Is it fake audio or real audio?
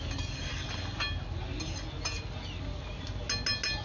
real